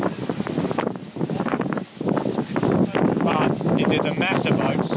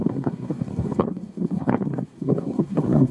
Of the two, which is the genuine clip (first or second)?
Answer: first